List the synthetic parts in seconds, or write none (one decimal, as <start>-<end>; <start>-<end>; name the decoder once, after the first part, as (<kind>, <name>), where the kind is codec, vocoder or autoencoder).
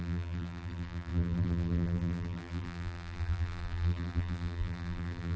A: 0.0-5.4 (vocoder, BigVGAN v2)